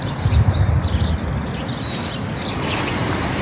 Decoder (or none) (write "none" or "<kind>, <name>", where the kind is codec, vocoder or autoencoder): none